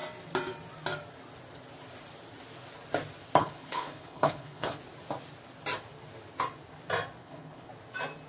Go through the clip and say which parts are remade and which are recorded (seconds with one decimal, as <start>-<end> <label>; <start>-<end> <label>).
0.0-3.4 recorded; 3.4-4.8 remade; 4.8-7.2 recorded; 7.2-7.7 remade; 7.7-8.3 recorded